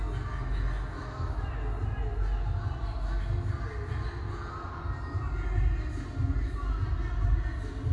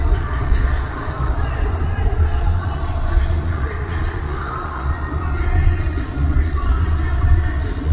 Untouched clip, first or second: first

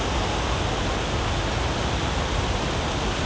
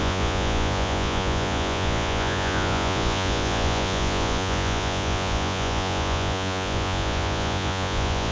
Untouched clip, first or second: first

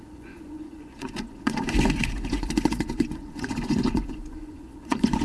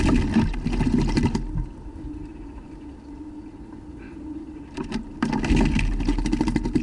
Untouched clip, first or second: second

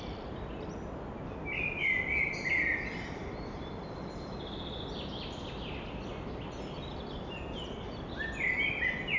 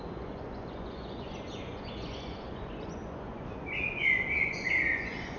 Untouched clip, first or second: first